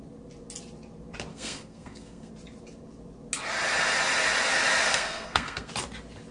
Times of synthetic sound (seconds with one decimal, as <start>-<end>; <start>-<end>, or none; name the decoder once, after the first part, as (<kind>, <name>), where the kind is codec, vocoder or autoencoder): 1.3-2.3 (codec, SNAC); 4.9-5.7